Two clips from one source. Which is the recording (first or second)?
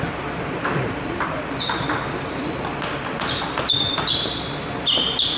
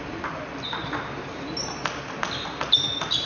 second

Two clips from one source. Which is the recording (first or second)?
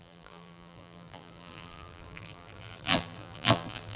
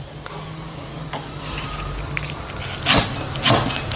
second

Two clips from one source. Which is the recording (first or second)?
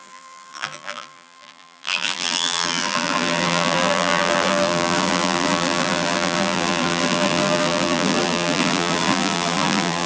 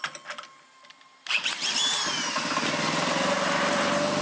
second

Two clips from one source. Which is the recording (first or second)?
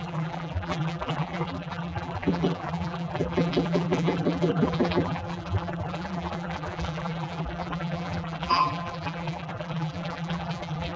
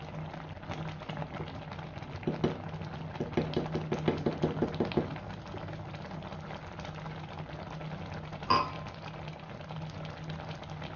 second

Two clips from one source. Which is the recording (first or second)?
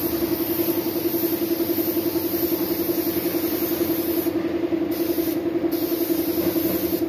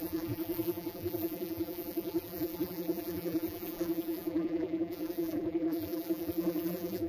first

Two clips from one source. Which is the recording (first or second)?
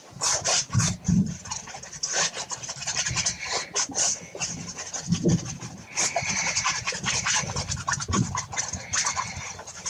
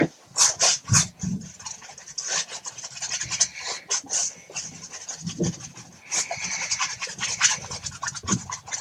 second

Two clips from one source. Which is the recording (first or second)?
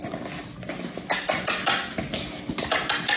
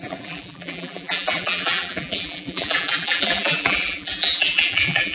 first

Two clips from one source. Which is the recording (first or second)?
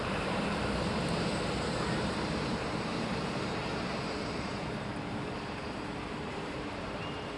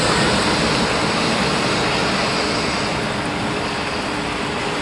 second